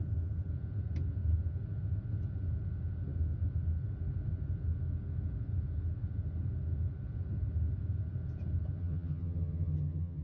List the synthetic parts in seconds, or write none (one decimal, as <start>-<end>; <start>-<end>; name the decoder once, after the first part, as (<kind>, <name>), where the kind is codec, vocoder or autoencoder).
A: 8.8-10.2 (vocoder, HiFi-GAN)